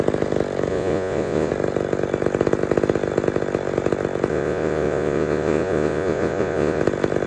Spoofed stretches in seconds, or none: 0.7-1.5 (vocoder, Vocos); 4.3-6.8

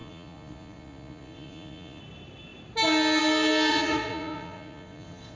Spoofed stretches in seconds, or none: 0.0-2.0 (vocoder, Vocos); 3.7-5.4